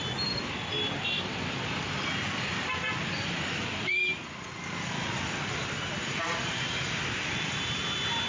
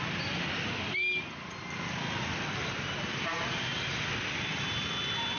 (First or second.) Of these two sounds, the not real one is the first